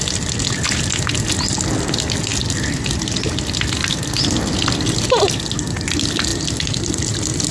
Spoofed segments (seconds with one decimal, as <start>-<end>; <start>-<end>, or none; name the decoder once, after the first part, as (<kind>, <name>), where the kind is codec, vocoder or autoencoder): none